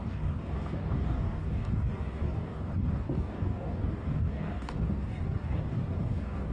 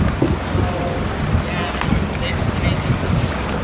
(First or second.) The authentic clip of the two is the second